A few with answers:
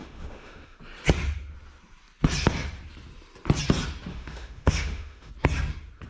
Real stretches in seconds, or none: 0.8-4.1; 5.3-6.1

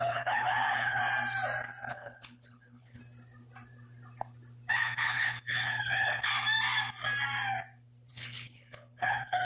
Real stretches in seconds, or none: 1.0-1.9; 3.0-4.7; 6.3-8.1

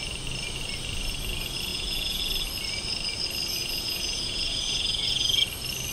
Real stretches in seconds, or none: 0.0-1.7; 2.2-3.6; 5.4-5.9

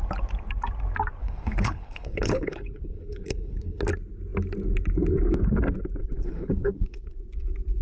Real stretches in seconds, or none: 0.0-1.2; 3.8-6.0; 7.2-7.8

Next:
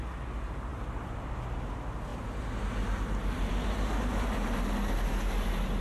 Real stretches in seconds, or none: 0.0-5.8